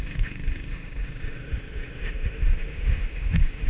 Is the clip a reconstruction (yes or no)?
yes